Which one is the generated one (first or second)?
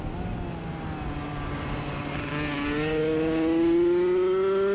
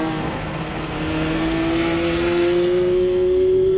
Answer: second